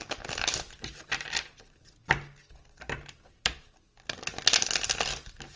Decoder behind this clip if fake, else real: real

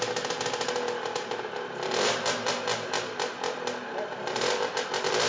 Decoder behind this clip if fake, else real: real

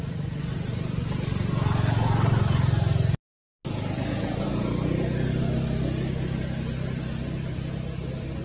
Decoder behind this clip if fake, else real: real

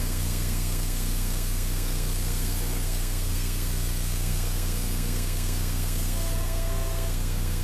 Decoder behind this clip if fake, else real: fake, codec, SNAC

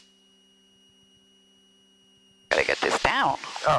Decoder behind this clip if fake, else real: real